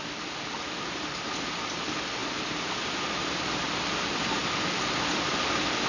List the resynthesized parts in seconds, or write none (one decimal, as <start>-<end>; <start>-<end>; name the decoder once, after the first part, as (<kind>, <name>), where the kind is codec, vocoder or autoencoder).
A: none